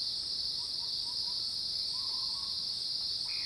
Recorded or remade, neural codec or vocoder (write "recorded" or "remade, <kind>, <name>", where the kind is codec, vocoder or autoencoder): recorded